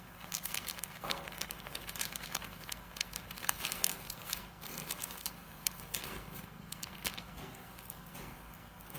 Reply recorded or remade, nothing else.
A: remade